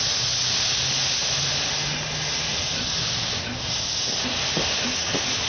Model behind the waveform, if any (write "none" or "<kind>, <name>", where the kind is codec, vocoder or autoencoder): none